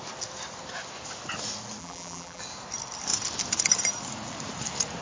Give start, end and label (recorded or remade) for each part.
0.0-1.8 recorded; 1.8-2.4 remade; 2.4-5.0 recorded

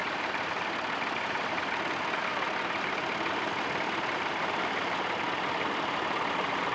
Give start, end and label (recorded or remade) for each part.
0.0-0.5 remade; 0.5-6.7 recorded

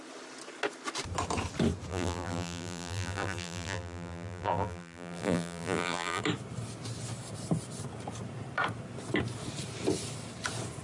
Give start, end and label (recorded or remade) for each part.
0.0-1.9 recorded; 1.9-6.2 remade; 6.2-10.8 recorded

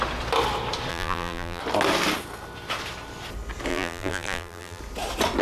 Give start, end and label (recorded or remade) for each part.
0.0-0.9 recorded; 0.9-1.6 remade; 1.6-3.7 recorded; 3.7-4.8 remade; 4.8-5.4 recorded